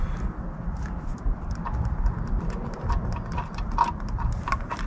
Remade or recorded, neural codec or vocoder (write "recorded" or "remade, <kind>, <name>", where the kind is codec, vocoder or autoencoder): recorded